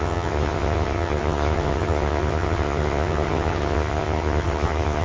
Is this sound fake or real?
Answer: fake